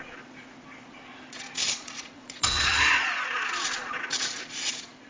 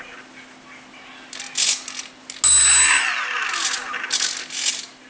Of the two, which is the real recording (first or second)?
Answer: second